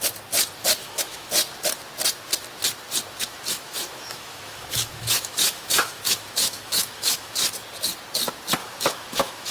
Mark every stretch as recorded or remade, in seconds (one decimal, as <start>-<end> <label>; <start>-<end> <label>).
0.0-0.8 recorded; 0.8-1.3 remade; 1.3-3.2 recorded; 3.2-7.5 remade; 7.5-8.6 recorded; 8.6-9.5 remade